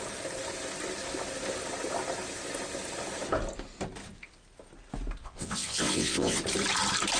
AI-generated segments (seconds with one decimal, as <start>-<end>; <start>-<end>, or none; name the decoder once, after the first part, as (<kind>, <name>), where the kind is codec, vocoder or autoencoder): 5.2-6.4 (vocoder, WaveNeXt)